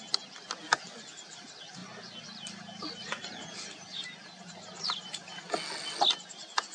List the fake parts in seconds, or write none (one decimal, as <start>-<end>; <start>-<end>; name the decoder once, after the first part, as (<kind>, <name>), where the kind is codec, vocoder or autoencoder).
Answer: none